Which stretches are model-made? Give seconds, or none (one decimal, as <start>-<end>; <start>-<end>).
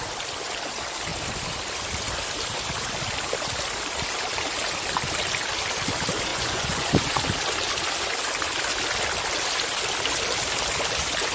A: 6.3-7.2